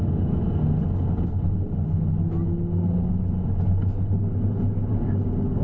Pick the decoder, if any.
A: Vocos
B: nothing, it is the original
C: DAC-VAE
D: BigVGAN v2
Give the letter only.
B